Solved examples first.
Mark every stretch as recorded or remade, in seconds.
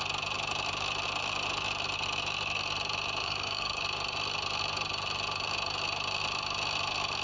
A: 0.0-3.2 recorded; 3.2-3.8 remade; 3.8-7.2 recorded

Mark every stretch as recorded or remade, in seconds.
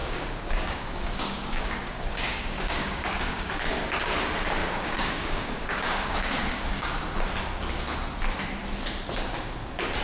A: 0.0-3.7 remade; 3.7-4.6 recorded; 4.6-6.9 remade; 6.9-10.0 recorded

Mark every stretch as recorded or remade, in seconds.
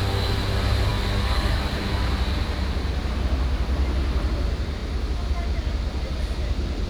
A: 0.0-0.9 recorded; 0.9-1.6 remade; 1.6-6.9 recorded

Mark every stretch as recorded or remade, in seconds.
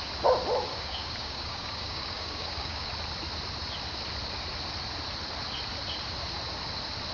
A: 0.0-0.7 recorded; 0.7-2.9 remade; 2.9-7.1 recorded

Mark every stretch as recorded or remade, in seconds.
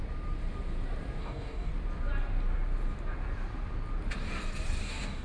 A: 0.0-1.2 recorded; 1.2-1.7 remade; 1.7-4.8 recorded; 4.8-5.2 remade